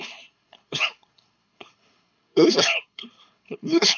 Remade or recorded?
remade